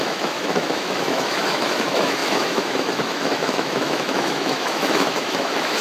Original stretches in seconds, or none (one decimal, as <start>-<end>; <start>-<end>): none